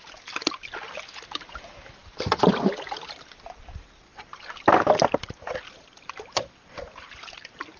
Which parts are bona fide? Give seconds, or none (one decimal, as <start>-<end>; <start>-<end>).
0.0-7.8